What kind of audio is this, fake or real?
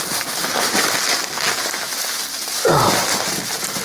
real